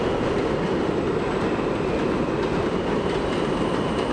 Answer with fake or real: real